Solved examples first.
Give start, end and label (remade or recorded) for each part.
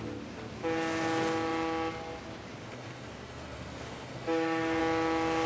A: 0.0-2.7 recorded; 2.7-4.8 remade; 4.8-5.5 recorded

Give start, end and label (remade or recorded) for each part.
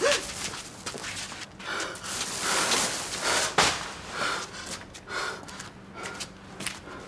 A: 0.0-7.1 recorded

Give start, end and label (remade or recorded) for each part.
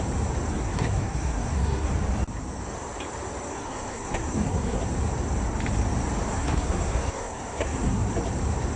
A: 0.0-0.5 recorded; 0.5-1.9 remade; 1.9-3.5 recorded; 3.5-4.8 remade; 4.8-6.3 recorded; 6.3-8.1 remade; 8.1-8.8 recorded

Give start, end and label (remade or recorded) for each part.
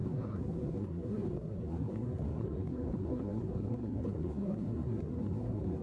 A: 0.0-5.8 remade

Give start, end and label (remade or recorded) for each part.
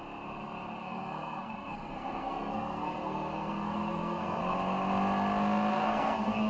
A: 0.0-0.8 recorded; 0.8-4.4 remade; 4.4-5.7 recorded; 5.7-6.5 remade